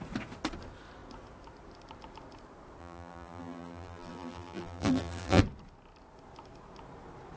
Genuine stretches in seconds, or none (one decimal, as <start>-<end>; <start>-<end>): 0.0-2.8; 5.4-7.4